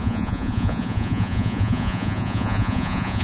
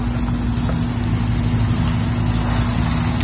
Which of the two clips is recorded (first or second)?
second